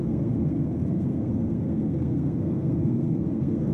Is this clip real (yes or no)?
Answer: no